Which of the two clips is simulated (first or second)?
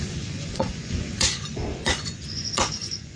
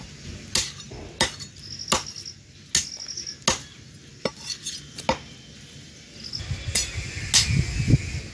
first